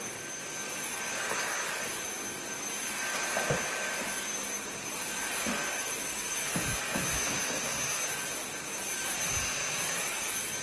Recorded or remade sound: recorded